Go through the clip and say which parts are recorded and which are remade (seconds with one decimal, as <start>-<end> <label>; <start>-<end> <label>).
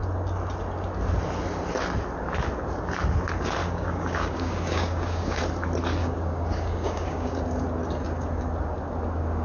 0.0-3.6 recorded; 3.6-5.4 remade; 5.4-6.0 recorded; 6.0-7.4 remade; 7.4-9.4 recorded